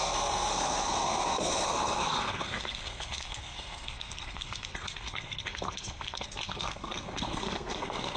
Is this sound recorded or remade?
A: remade